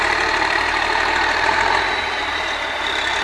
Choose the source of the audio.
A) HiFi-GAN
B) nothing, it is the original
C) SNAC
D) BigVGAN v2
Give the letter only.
D